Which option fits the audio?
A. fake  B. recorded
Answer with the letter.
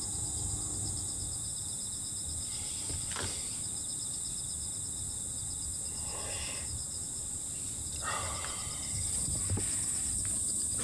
B